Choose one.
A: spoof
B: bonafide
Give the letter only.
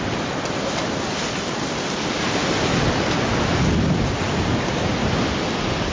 B